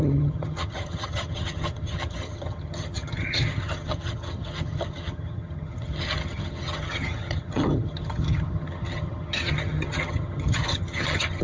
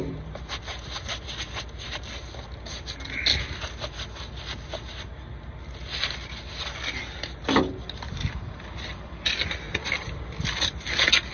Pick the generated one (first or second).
first